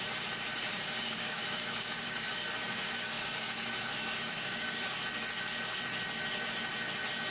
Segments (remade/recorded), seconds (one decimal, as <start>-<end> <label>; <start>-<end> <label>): 0.0-0.7 recorded; 0.7-4.9 remade; 4.9-7.3 recorded